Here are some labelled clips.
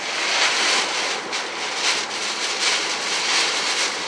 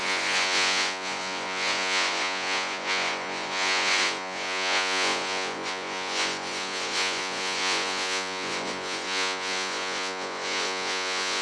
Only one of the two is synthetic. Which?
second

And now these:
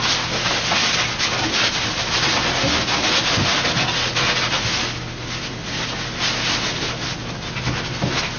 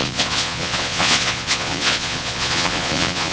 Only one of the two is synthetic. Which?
second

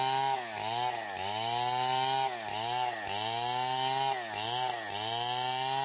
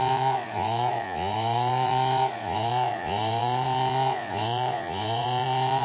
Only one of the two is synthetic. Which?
second